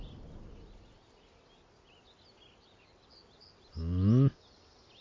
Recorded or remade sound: recorded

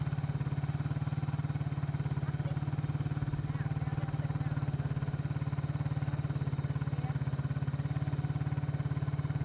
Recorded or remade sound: recorded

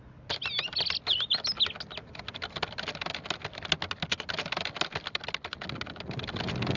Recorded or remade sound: recorded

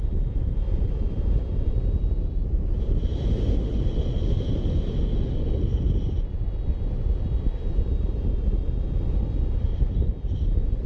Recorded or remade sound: recorded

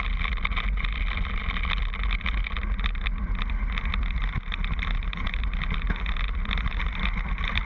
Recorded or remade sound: recorded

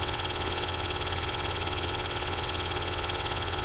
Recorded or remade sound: remade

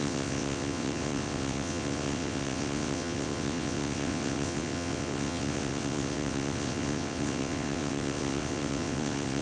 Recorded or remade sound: remade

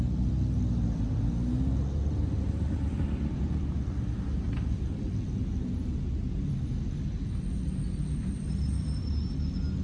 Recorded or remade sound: recorded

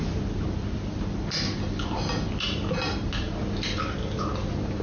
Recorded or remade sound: recorded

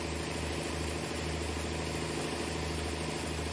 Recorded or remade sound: recorded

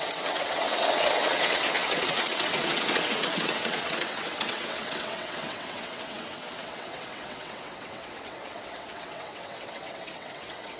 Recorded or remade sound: remade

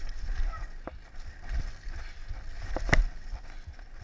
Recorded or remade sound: recorded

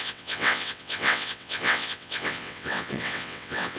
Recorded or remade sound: remade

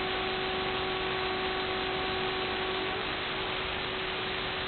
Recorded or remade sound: recorded